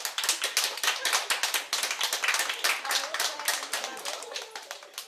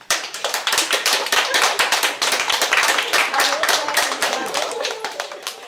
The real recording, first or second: first